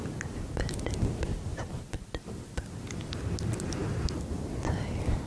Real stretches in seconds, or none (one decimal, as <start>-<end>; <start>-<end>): 0.0-5.3